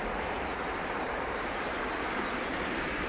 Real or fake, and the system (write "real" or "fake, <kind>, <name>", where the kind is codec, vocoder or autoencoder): fake, vocoder, BigVGAN v2